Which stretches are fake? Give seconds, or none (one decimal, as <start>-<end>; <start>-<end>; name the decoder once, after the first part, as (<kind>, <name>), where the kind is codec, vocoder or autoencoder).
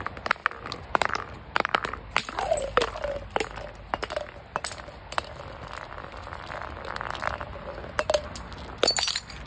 none